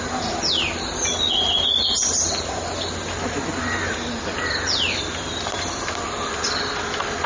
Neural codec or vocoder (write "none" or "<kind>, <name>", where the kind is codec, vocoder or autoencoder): none